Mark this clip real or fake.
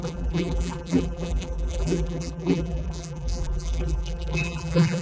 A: fake